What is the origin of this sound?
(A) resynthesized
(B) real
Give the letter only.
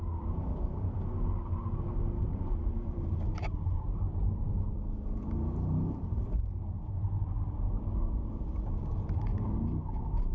A